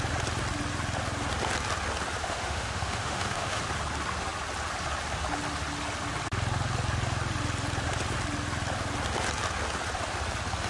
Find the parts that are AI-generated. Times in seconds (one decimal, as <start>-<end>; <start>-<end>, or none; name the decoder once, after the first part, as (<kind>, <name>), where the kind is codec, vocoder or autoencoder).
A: 2.2-3.6 (autoencoder, DAC-VAE)